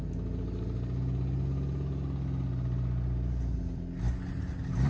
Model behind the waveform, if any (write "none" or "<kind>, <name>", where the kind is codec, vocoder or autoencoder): none